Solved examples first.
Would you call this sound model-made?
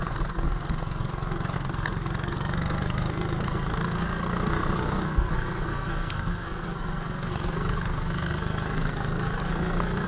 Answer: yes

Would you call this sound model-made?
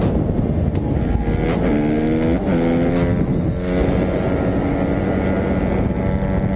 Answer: no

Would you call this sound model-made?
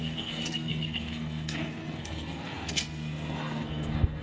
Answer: yes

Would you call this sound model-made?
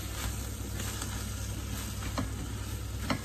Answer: no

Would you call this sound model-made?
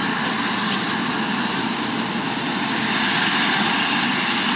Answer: no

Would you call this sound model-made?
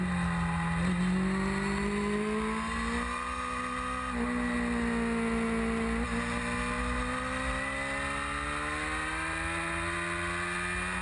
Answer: no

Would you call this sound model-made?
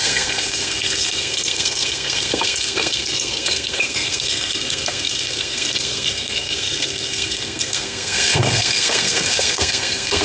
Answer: yes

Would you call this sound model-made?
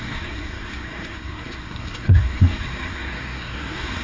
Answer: yes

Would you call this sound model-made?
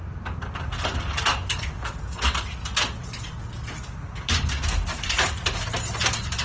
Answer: no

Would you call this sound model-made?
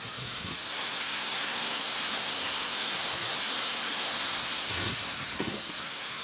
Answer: yes